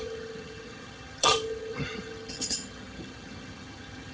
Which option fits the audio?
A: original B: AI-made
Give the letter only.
B